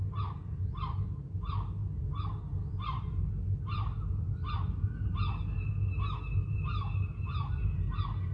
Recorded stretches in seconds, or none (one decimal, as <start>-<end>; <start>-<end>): 0.0-8.3